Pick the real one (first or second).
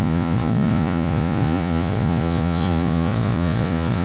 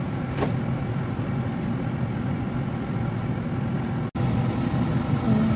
second